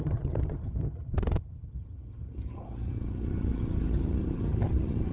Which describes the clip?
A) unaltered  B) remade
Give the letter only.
B